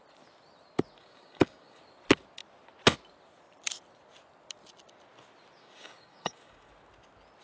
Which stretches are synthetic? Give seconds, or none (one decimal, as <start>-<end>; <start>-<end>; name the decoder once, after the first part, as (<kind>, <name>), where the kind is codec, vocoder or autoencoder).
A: 1.0-1.8 (codec, DAC); 5.6-6.7